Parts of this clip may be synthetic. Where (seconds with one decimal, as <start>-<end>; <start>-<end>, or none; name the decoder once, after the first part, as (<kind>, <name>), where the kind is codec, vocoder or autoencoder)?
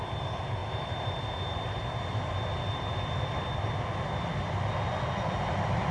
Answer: none